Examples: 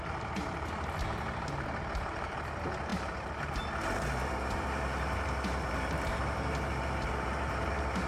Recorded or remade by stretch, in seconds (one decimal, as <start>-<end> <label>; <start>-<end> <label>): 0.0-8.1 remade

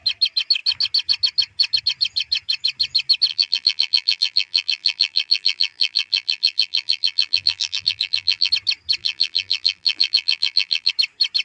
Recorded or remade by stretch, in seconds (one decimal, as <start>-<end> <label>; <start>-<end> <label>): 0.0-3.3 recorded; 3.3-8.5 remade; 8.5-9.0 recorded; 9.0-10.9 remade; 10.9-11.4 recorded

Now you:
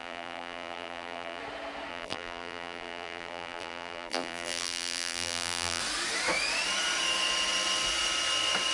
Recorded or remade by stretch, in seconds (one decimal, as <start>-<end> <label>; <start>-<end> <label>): 0.0-1.4 remade; 1.4-1.9 recorded; 1.9-5.8 remade; 5.8-8.7 recorded

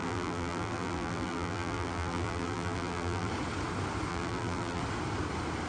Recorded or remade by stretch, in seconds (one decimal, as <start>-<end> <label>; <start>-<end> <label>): 0.0-3.3 remade; 3.3-4.1 recorded; 4.1-4.8 remade; 4.8-5.7 recorded

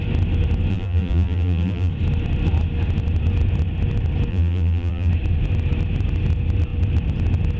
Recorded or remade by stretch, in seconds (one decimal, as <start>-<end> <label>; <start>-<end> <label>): 0.0-0.7 recorded; 0.7-1.9 remade; 1.9-4.3 recorded; 4.3-5.1 remade; 5.1-7.6 recorded

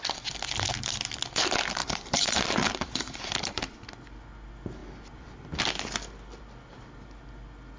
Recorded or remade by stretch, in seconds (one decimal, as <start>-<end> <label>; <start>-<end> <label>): 0.0-1.8 recorded; 1.8-3.6 remade; 3.6-7.8 recorded

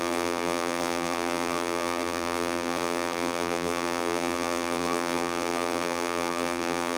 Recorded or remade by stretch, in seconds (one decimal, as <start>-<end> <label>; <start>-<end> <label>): 0.0-7.0 remade

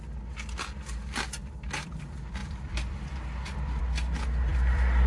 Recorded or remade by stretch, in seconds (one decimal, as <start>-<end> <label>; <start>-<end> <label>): 0.0-1.4 recorded; 1.4-2.0 remade; 2.0-2.4 recorded; 2.4-3.8 remade; 3.8-4.5 recorded; 4.5-5.1 remade